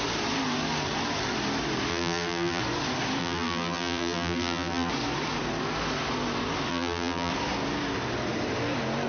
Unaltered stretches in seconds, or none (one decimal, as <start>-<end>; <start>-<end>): 0.0-1.9; 2.6-3.2; 4.9-6.7; 7.3-9.1